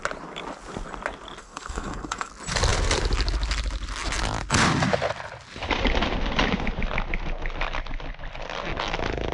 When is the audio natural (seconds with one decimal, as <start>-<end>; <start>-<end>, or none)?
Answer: 0.0-1.4; 2.3-9.3

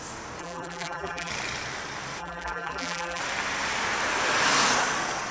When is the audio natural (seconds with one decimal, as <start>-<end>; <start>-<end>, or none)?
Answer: 0.0-0.4; 1.3-2.2; 3.2-5.3

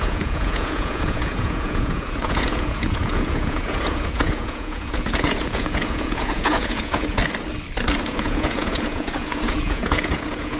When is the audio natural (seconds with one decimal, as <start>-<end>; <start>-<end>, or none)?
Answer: 7.2-8.0

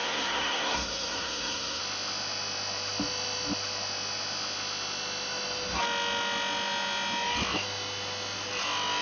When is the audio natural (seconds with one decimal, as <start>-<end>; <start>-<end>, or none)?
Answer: 1.8-9.0